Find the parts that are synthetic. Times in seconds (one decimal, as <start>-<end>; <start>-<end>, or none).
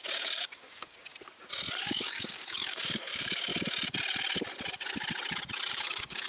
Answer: 0.0-1.1; 1.8-3.5; 5.7-6.3